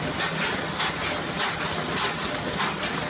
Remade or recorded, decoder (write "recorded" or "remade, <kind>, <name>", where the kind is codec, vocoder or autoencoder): recorded